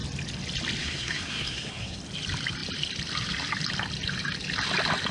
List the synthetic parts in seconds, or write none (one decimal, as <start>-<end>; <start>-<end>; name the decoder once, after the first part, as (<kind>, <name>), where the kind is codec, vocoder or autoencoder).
0.8-2.0 (codec, SNAC)